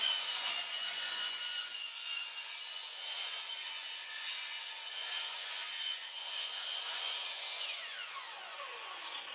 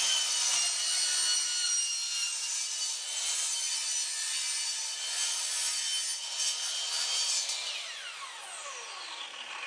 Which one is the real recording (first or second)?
second